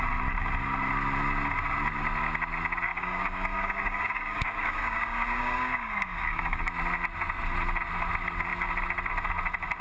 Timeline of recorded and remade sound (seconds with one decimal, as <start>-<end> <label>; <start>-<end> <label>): 0.0-2.9 recorded; 2.9-6.7 remade; 6.7-9.8 recorded